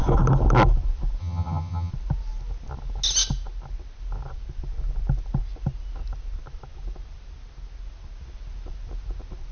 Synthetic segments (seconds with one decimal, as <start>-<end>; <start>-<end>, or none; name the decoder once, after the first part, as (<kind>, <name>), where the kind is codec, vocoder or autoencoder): 1.2-1.9 (vocoder, HiFi-GAN)

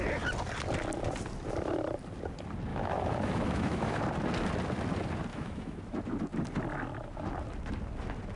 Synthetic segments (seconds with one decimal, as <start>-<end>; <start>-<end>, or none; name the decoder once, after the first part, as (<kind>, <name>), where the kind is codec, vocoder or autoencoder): 2.7-4.0 (autoencoder, DAC-VAE); 5.3-5.8